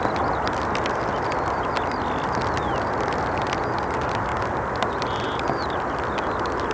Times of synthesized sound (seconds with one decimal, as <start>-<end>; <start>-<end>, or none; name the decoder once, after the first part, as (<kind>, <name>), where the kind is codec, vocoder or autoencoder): none